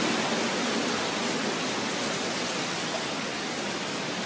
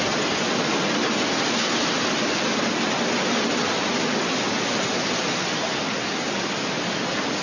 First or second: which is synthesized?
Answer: first